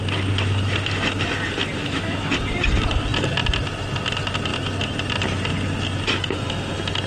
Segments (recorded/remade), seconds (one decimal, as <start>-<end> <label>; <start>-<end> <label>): 0.0-1.8 recorded; 1.8-2.3 remade; 2.3-7.1 recorded